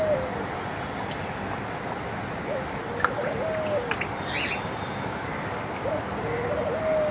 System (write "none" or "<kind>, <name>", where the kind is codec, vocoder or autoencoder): none